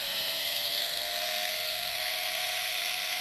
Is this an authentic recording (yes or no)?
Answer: no